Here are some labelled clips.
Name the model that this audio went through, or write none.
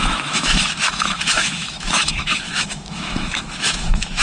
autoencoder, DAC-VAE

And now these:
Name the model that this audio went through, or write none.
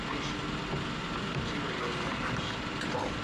none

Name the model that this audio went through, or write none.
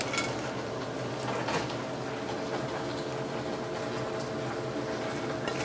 none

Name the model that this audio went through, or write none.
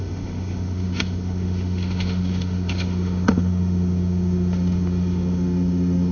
autoencoder, DAC-VAE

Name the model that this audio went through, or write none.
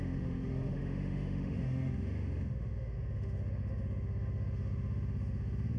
autoencoder, DAC-VAE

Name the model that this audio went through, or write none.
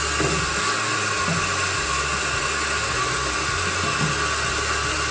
none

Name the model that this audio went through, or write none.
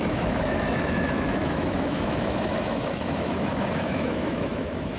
autoencoder, DAC-VAE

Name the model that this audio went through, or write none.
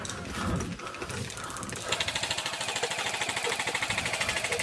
none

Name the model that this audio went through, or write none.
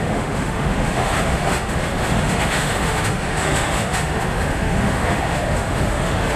autoencoder, DAC-VAE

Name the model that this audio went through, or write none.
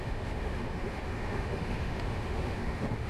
autoencoder, DAC-VAE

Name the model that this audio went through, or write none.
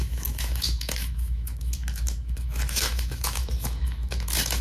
autoencoder, DAC-VAE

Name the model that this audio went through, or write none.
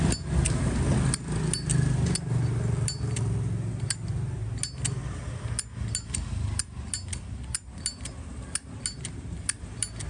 none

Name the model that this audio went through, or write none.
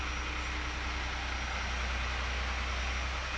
none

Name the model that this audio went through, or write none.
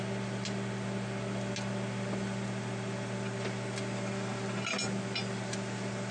none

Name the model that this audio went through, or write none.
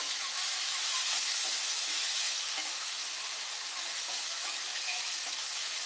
autoencoder, DAC-VAE